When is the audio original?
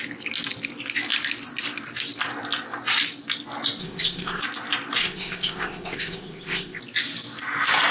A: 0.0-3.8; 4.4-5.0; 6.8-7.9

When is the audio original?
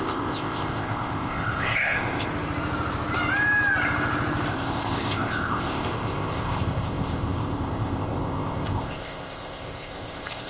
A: 2.3-4.5